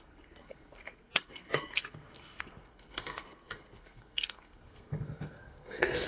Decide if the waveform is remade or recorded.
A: remade